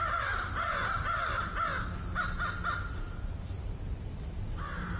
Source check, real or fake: real